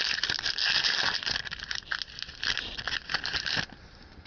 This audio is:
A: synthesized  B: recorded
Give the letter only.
B